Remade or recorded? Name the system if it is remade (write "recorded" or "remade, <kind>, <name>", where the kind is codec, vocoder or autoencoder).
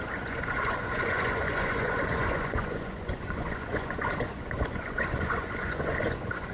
remade, vocoder, Vocos